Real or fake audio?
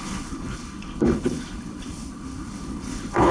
fake